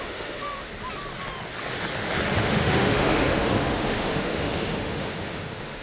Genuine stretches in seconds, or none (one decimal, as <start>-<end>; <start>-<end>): 0.7-2.4

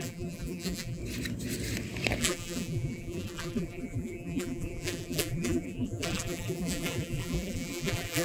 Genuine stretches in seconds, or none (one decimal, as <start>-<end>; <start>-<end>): 1.0-2.2

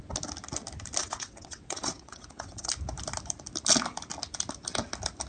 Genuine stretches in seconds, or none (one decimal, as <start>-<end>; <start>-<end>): 0.0-1.0; 2.7-5.3

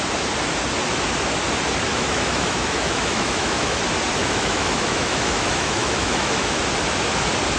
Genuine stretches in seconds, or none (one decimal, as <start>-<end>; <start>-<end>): 0.0-1.9; 3.8-4.2; 6.6-7.6

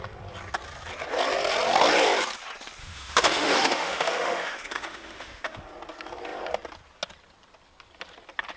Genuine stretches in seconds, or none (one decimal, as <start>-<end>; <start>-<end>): 0.0-2.8; 5.6-8.6

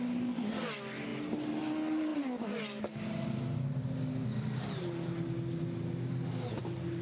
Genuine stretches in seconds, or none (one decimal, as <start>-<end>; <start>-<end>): 0.0-7.0